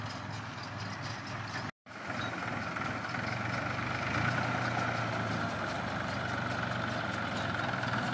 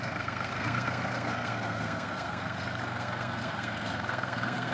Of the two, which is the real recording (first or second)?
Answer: first